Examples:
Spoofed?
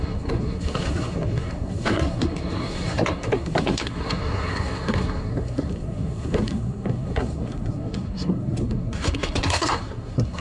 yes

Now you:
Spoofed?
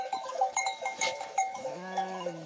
yes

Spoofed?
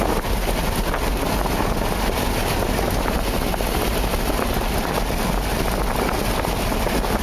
no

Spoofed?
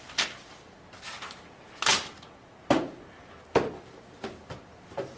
no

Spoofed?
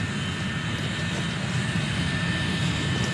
no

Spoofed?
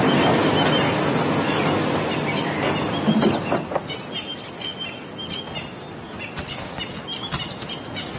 no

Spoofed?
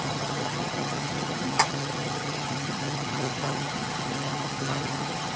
yes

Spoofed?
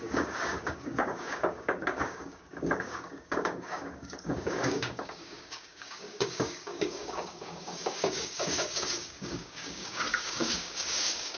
yes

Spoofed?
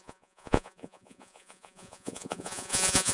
yes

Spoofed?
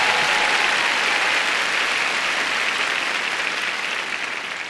no